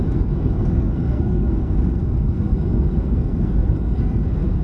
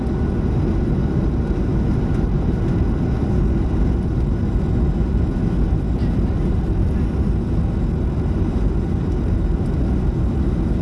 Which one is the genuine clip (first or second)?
second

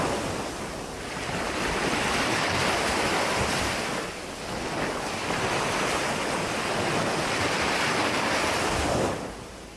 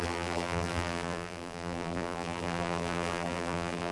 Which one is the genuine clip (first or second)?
first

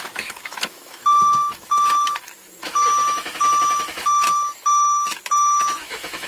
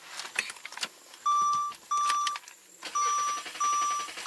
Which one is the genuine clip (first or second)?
second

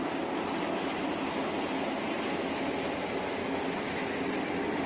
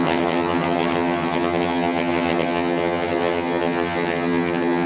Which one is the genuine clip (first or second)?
first